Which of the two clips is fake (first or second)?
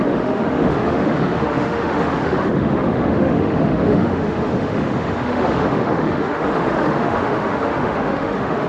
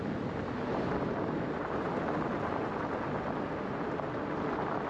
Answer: first